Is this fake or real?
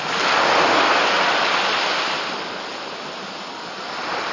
real